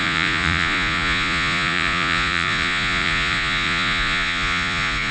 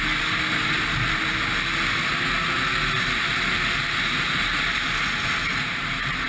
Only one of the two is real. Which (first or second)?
second